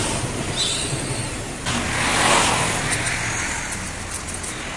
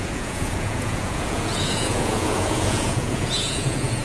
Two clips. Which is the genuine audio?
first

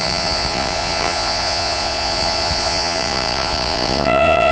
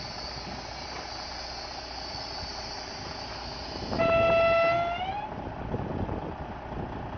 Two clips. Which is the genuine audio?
second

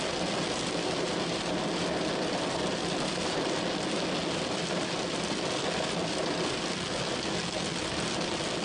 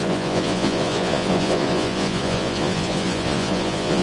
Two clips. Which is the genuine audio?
first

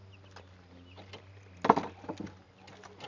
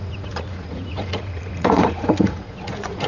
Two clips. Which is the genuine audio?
first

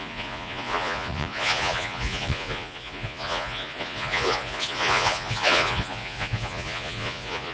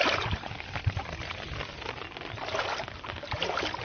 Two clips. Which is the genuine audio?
second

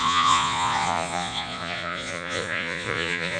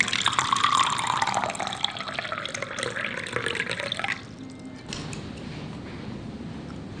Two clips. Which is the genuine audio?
second